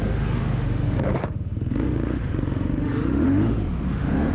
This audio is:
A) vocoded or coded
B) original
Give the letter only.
A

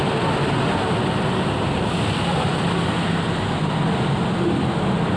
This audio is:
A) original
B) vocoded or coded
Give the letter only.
A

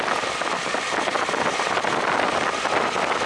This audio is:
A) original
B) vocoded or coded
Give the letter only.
A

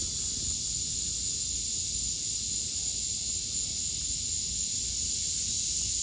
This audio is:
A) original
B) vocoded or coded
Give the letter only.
A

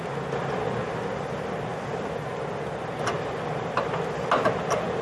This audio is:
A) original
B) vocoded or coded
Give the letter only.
A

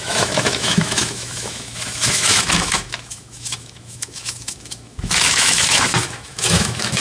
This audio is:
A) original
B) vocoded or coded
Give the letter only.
B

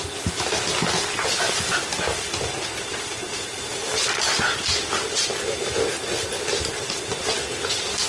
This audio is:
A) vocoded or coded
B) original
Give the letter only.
B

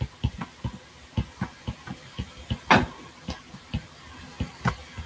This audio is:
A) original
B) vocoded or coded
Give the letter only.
A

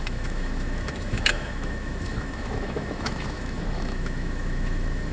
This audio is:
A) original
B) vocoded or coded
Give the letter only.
B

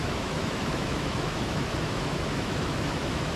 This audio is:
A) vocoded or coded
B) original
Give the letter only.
A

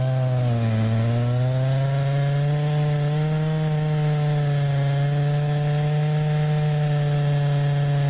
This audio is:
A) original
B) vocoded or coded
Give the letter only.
A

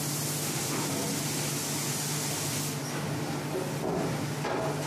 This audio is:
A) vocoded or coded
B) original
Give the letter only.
B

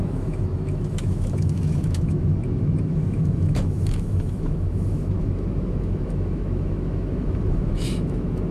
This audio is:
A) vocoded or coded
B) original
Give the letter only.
A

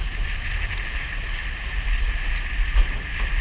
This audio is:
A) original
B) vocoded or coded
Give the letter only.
A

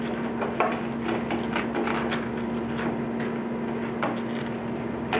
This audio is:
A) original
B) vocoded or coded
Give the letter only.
A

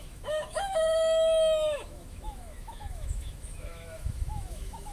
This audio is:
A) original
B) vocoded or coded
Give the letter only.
B